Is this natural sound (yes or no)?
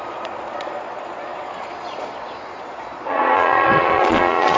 no